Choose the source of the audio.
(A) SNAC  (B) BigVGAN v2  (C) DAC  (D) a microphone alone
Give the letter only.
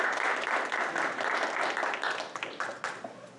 D